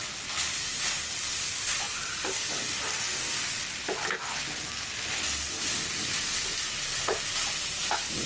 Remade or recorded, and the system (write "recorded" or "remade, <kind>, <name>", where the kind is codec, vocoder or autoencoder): recorded